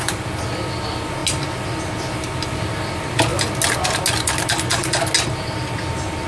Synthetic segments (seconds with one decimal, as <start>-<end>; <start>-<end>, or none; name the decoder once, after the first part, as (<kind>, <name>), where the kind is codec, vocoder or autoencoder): none